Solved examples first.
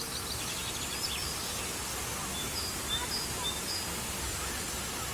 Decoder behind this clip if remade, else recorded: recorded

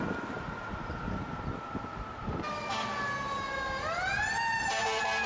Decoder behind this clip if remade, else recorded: recorded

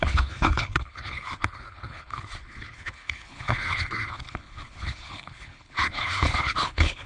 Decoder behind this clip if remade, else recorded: remade, codec, HILCodec